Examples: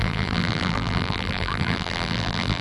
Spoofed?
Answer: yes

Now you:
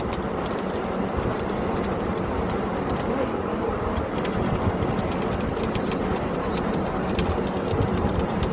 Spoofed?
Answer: no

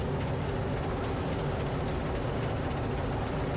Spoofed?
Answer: no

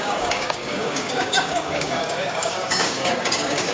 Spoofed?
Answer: yes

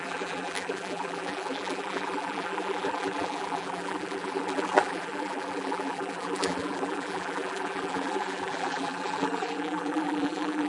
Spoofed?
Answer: yes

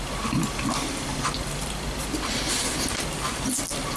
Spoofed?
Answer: no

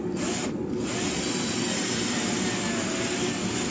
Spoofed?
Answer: no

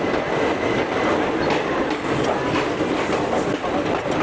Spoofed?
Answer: no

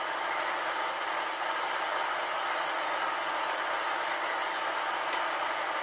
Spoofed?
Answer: no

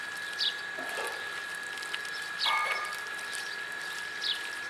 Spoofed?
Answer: yes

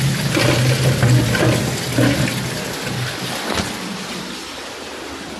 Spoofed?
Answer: no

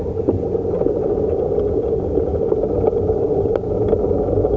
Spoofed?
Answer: no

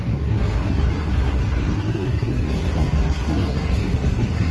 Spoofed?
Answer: yes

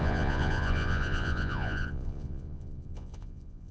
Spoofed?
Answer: yes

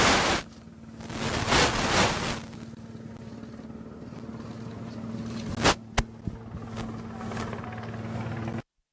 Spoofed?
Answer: no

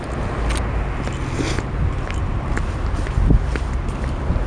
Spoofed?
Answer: no